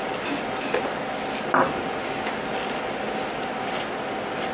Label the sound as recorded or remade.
recorded